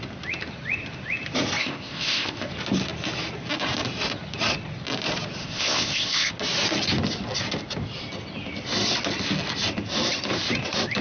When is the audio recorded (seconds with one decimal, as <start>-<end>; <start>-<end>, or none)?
0.0-1.6; 2.5-5.4; 6.3-11.0